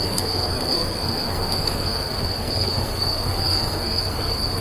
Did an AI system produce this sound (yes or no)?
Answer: yes